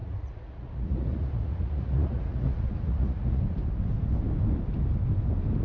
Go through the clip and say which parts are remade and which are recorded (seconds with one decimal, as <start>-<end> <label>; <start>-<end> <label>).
0.0-3.4 remade; 3.4-5.6 recorded